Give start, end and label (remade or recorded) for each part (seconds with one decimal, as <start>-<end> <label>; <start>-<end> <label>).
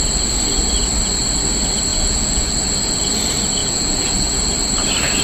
0.0-1.9 recorded; 1.9-2.5 remade; 2.5-3.6 recorded; 3.6-4.5 remade; 4.5-5.2 recorded